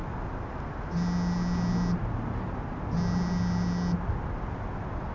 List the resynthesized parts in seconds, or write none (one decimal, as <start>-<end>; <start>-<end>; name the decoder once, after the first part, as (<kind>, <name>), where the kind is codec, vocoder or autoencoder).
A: none